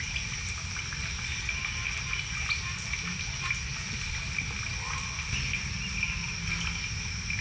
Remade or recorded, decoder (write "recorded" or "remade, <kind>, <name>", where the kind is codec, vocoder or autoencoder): recorded